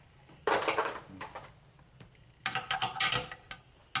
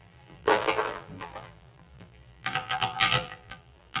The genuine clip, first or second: first